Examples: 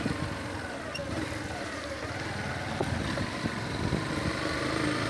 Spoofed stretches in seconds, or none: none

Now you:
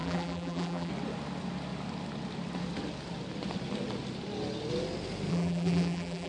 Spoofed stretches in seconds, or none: 0.0-0.9 (vocoder, BigVGAN v2); 5.3-6.3

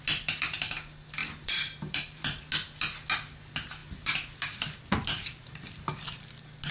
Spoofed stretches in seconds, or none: 1.2-2.5 (vocoder, BigVGAN v2); 3.8-5.8

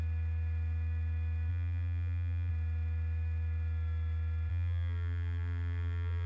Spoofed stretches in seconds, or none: 1.5-2.5 (vocoder, BigVGAN v2); 4.5-6.3

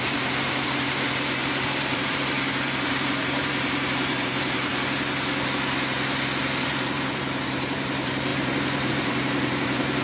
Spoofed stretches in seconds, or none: 0.0-4.7 (vocoder, BigVGAN v2); 6.4-10.0

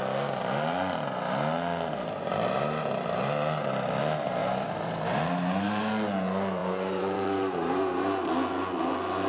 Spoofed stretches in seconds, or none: 4.4-5.9 (vocoder, BigVGAN v2); 6.6-7.8

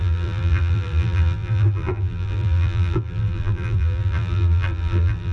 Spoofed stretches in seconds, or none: 0.0-5.3 (vocoder, BigVGAN v2)

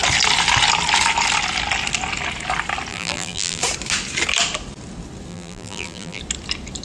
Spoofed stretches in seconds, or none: 2.9-3.6 (vocoder, BigVGAN v2); 5.3-6.2